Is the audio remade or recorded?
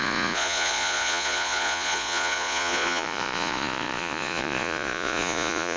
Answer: remade